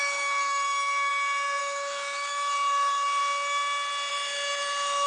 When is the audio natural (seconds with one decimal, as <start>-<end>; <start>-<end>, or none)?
1.1-1.6; 3.2-4.1